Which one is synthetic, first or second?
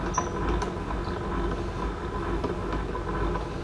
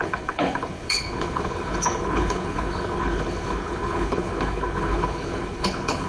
second